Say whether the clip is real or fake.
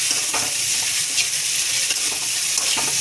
real